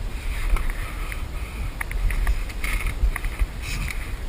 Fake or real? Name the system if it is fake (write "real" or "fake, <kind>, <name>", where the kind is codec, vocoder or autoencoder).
real